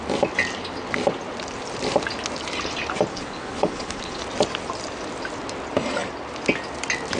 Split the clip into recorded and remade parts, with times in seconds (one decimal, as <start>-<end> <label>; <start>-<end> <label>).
0.0-3.1 recorded; 3.1-4.2 remade; 4.2-7.2 recorded